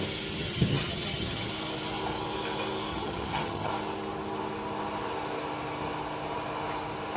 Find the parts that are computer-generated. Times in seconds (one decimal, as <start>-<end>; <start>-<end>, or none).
0.4-1.5; 2.9-3.7